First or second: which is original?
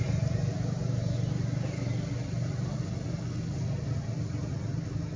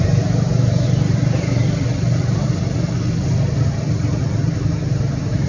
first